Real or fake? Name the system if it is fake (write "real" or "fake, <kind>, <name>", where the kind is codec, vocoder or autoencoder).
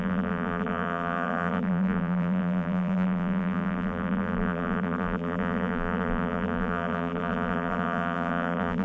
fake, vocoder, BigVGAN v2